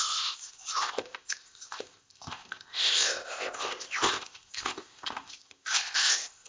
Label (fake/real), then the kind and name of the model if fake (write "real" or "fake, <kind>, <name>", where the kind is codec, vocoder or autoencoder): fake, codec, ZipCodec